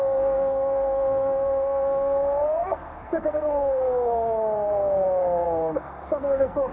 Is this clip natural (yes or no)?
no